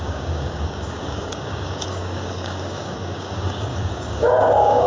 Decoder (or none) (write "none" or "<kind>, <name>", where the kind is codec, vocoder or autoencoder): codec, DAC